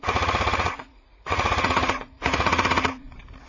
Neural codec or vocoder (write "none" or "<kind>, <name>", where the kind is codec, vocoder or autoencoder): vocoder, Vocos